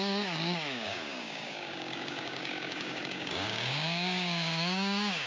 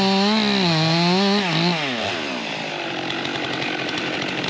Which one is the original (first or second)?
second